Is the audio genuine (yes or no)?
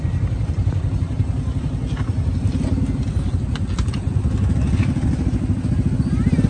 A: yes